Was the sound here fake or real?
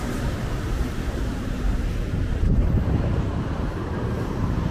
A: fake